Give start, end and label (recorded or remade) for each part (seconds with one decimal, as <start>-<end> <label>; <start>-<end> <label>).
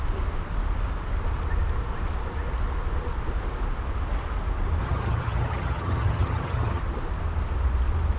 0.0-4.8 recorded; 4.8-6.8 remade; 6.8-8.2 recorded